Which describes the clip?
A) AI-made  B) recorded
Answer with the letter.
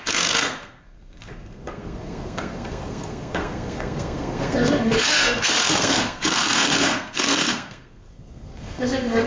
A